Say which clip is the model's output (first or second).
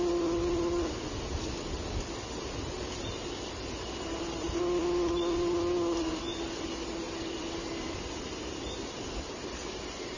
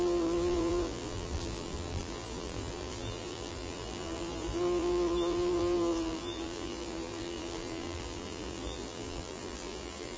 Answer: second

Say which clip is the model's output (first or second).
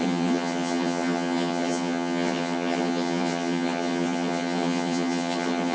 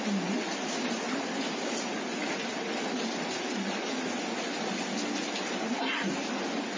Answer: first